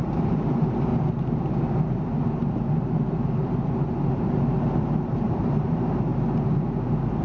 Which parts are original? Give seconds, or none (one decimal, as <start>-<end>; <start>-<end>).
0.9-4.8; 6.1-7.2